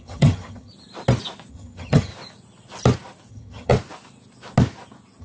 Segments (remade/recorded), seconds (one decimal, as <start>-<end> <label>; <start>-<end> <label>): 0.0-0.7 remade; 0.7-1.5 recorded; 1.5-2.1 remade; 2.1-3.3 recorded; 3.3-3.7 remade; 3.7-5.2 recorded